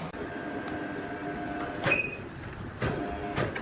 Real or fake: real